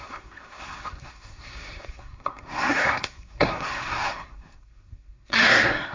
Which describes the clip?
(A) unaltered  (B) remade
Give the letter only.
B